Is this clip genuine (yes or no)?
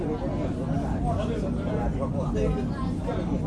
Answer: yes